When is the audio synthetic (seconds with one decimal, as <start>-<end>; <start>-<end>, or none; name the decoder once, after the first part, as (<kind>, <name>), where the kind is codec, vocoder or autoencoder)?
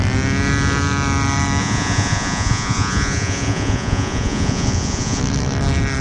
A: 1.6-5.2 (vocoder, Vocos)